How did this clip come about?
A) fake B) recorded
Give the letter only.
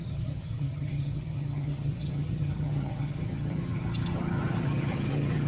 A